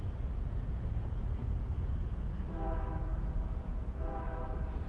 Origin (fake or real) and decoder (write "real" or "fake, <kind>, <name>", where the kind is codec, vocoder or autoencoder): fake, vocoder, Vocos